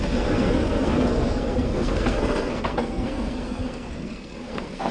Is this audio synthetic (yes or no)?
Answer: yes